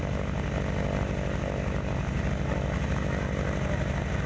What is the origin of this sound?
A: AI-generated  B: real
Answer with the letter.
B